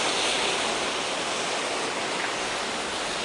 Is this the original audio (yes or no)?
yes